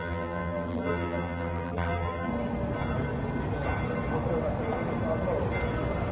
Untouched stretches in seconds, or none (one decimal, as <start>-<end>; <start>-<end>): 2.3-6.1